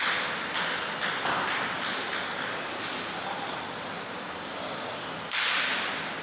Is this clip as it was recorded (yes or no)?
yes